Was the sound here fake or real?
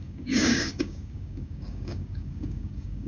fake